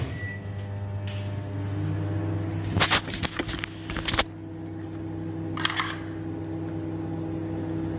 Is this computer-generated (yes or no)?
no